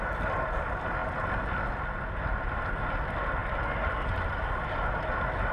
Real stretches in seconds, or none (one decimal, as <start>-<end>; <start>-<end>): 0.0-3.4; 4.5-5.5